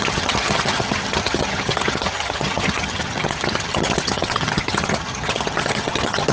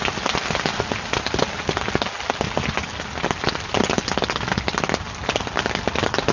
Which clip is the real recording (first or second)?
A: second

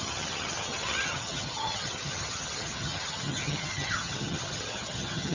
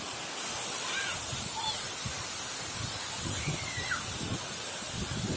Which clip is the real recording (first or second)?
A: second